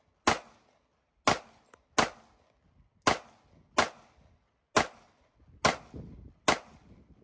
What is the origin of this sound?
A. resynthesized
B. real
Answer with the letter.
B